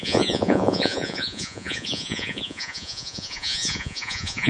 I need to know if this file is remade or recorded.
remade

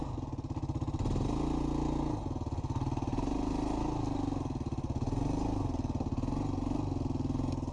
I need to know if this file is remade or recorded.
recorded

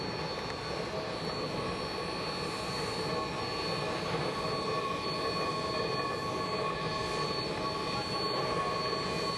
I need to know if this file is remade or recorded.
recorded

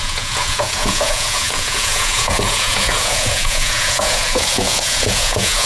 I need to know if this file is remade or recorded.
remade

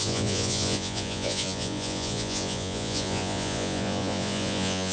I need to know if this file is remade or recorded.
remade